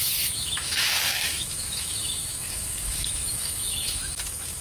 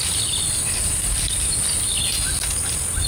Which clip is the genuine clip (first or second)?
second